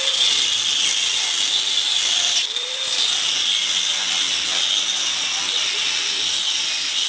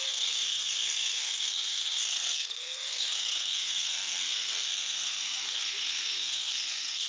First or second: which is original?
first